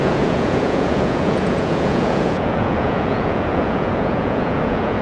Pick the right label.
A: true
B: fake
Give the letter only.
B